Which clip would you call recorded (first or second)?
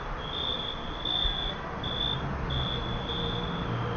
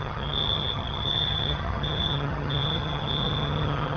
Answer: first